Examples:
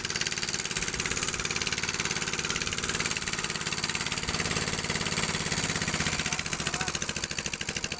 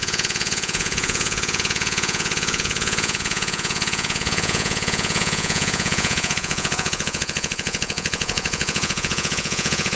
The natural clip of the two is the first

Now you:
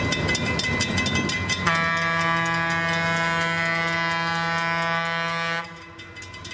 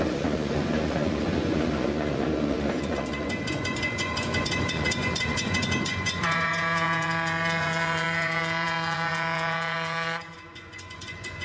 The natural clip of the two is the first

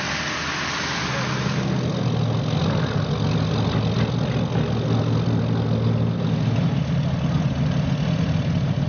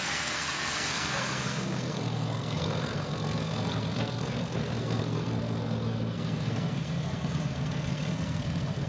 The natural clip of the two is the first